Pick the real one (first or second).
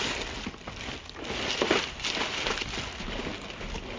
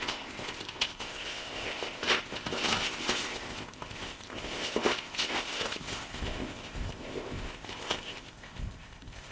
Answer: first